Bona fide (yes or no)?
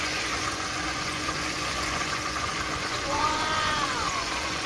no